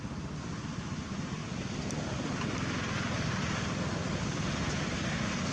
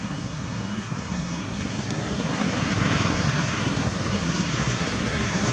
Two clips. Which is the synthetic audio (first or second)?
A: second